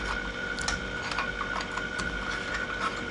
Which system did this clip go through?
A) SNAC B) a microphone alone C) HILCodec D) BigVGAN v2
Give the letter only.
B